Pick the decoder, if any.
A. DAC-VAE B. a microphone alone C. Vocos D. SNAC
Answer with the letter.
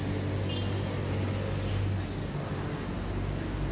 B